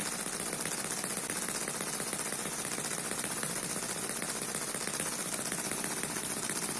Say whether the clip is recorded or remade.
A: recorded